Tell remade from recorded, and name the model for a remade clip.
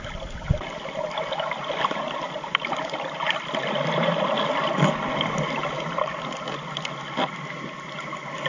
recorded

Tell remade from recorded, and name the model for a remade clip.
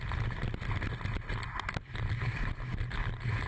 recorded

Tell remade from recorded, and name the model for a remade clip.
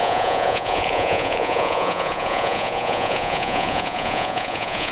remade, vocoder, Vocos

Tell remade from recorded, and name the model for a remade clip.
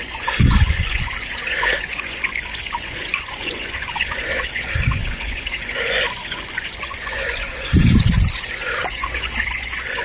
remade, vocoder, Vocos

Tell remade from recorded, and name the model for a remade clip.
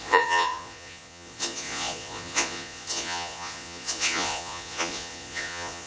remade, vocoder, Vocos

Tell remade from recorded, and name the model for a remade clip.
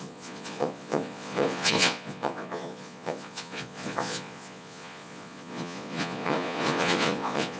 remade, vocoder, Vocos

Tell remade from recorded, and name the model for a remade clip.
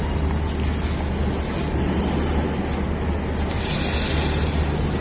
recorded